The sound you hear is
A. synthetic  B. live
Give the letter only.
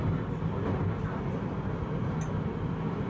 B